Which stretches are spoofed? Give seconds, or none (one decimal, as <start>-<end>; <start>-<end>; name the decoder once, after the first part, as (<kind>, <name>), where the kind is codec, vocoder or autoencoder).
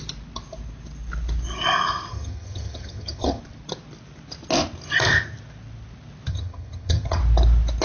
2.1-3.4 (vocoder, HiFi-GAN); 6.3-7.2